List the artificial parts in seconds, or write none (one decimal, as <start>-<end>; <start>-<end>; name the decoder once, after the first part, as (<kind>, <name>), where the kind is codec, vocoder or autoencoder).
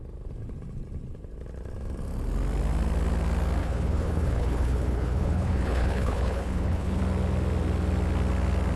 3.6-7.0 (codec, HILCodec)